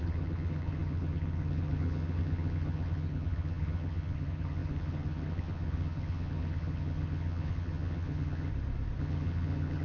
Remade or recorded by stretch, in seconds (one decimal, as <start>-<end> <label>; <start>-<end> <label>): 0.0-8.5 remade; 8.5-9.0 recorded; 9.0-9.8 remade